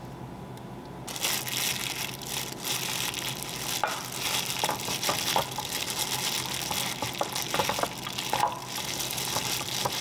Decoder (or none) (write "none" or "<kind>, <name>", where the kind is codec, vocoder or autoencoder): none